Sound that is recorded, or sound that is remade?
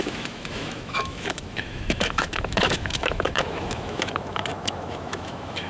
remade